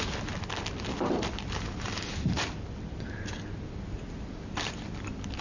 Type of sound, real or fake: real